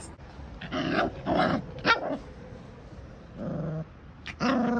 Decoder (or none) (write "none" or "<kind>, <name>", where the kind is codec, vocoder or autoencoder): none